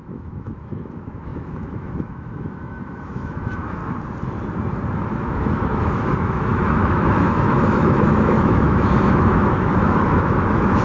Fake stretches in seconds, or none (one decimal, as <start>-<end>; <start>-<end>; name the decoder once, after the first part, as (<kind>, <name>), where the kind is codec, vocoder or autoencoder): 0.0-3.8 (autoencoder, DAC-VAE); 4.9-10.8